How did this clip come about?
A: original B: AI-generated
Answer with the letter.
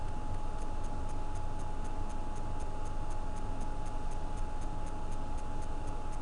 A